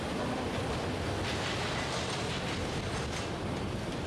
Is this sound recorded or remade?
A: recorded